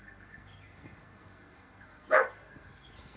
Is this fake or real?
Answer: fake